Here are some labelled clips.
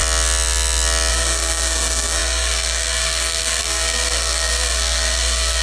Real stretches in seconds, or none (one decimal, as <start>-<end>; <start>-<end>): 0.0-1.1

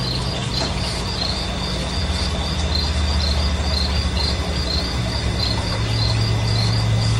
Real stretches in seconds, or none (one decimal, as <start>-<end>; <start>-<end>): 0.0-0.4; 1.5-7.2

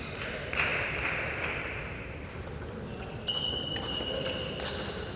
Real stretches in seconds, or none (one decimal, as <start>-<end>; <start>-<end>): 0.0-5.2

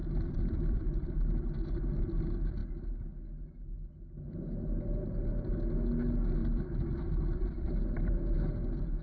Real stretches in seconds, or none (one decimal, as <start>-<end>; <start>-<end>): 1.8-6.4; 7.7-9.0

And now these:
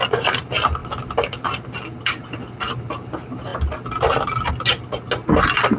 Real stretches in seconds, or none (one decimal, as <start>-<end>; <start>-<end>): 0.0-5.8

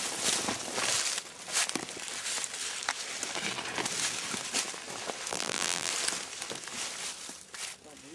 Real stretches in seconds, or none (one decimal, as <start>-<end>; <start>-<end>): 0.0-5.3; 5.9-8.1

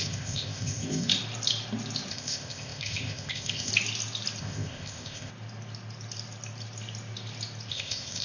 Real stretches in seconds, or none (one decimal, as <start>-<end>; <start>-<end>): 1.1-2.1; 3.7-4.4; 5.3-7.7